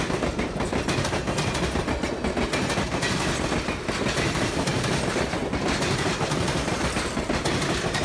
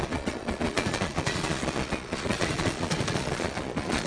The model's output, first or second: second